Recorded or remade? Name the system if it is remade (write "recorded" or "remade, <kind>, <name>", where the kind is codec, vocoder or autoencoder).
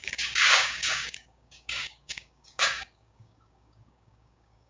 remade, codec, DAC